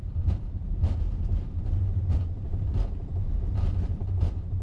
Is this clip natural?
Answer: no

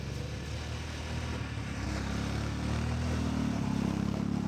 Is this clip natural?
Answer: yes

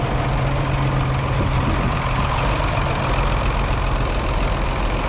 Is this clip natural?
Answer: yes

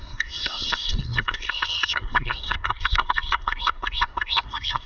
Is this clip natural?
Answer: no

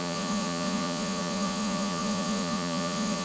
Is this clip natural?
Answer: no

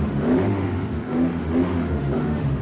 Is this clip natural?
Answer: no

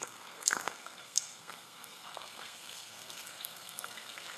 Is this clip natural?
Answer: no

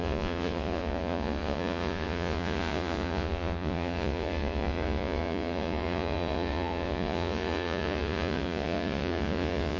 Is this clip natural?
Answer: no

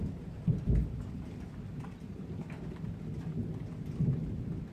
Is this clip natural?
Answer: yes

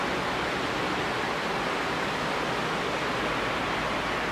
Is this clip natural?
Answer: yes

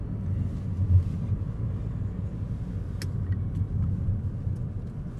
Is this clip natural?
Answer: yes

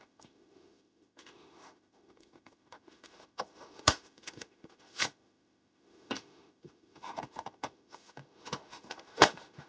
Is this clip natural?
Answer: no